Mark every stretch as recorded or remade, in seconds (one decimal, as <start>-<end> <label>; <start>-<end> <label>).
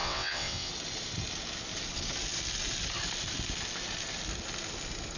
0.0-0.7 remade; 0.7-5.2 recorded